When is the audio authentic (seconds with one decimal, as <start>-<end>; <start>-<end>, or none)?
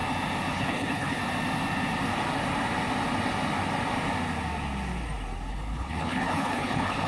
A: 0.0-0.5; 1.2-5.5